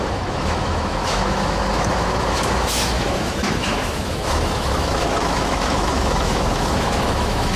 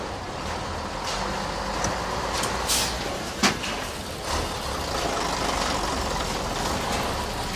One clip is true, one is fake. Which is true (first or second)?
second